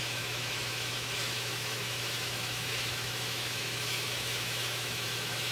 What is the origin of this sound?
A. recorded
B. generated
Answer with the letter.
B